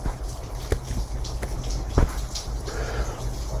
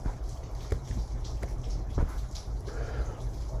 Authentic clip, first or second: first